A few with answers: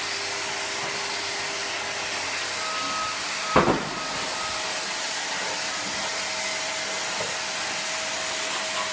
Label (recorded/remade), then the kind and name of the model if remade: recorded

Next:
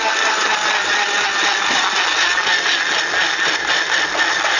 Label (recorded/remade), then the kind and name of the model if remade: recorded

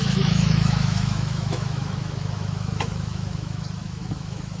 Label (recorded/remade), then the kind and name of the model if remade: remade, autoencoder, DAC-VAE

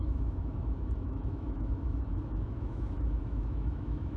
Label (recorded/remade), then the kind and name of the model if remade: remade, autoencoder, DAC-VAE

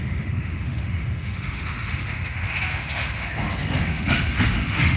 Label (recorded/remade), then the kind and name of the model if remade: remade, autoencoder, DAC-VAE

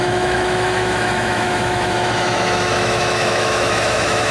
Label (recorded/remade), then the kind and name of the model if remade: remade, autoencoder, DAC-VAE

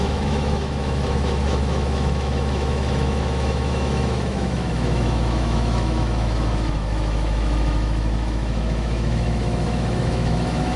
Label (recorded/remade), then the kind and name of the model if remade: remade, autoencoder, DAC-VAE